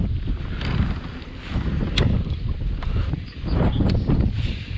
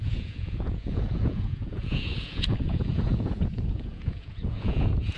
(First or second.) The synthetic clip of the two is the second